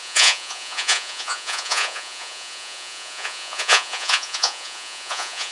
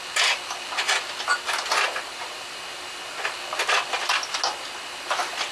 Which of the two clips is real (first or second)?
second